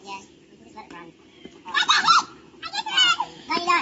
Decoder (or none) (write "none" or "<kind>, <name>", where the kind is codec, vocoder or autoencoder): none